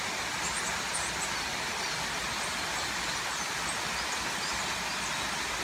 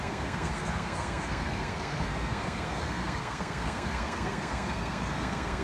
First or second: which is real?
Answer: first